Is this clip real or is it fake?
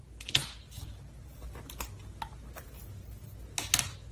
real